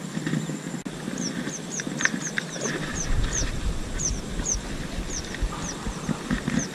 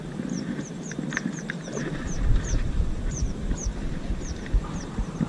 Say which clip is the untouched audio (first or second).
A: first